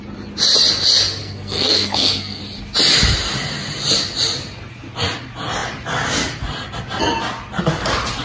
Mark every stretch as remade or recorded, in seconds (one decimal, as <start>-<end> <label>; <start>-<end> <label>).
0.0-1.2 recorded; 1.2-2.4 remade; 2.4-8.2 recorded